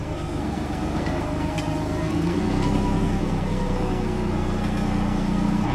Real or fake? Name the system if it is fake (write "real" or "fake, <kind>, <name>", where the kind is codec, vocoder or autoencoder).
fake, codec, SNAC